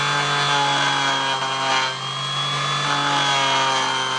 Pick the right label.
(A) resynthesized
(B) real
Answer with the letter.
B